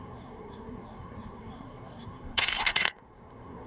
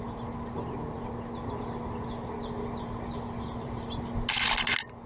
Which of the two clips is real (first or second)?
second